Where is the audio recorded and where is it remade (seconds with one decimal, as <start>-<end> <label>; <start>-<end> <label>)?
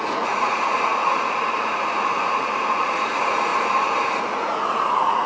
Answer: 0.0-3.5 remade; 3.5-4.2 recorded; 4.2-5.3 remade